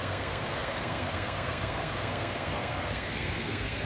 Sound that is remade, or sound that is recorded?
remade